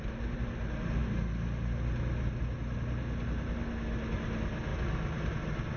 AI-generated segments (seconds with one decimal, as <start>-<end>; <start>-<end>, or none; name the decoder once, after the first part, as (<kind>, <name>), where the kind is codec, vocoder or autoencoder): none